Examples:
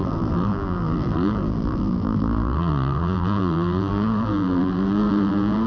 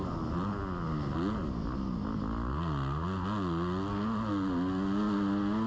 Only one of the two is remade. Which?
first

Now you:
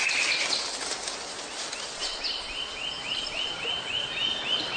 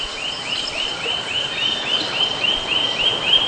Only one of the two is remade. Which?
second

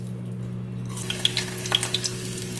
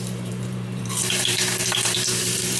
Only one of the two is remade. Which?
second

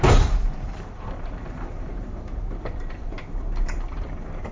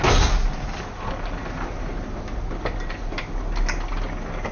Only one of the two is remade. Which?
first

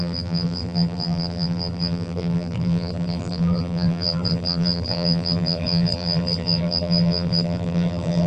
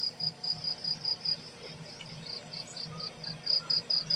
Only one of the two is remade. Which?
first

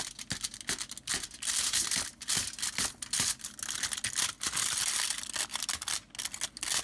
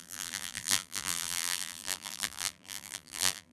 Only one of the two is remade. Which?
second